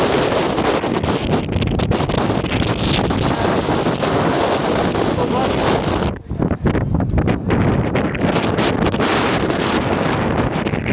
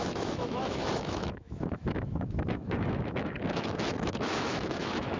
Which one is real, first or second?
first